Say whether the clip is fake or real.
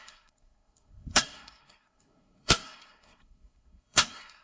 fake